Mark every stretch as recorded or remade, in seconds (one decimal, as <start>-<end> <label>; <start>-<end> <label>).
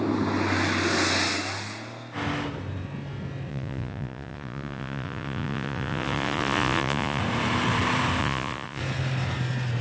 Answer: 0.0-3.5 recorded; 3.5-7.2 remade; 7.2-8.2 recorded; 8.2-8.8 remade; 8.8-9.8 recorded